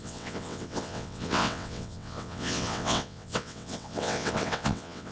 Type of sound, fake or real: fake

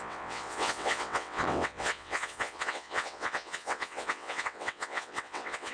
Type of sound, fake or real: fake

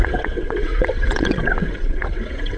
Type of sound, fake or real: fake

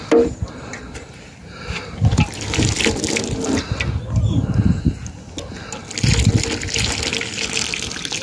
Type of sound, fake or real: real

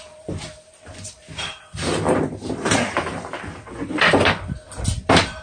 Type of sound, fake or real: real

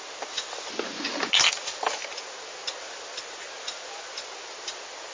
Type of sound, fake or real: real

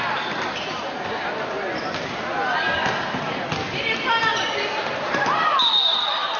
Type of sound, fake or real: real